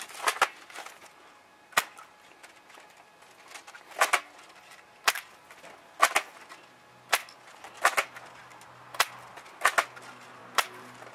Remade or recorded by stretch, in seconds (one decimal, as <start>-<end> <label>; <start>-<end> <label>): 0.0-10.4 recorded; 10.4-11.1 remade